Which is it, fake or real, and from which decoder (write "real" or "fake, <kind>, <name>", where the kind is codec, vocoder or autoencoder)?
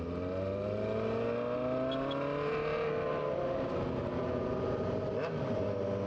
real